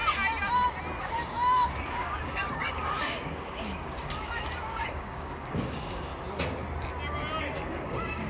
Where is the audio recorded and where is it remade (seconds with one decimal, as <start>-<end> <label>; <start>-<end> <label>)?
0.0-1.0 recorded; 1.0-6.1 remade; 6.1-7.4 recorded; 7.4-8.3 remade